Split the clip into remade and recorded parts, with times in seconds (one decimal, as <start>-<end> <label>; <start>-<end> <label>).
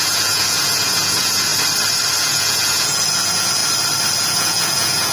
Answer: 0.0-1.5 remade; 1.5-2.2 recorded; 2.2-3.6 remade; 3.6-4.3 recorded; 4.3-5.1 remade